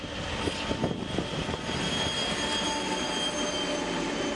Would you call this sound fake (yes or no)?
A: no